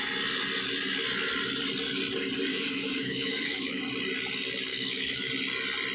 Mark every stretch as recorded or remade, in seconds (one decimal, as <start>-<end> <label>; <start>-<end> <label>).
0.0-2.5 recorded; 2.5-3.8 remade; 3.8-4.7 recorded; 4.7-5.3 remade; 5.3-5.9 recorded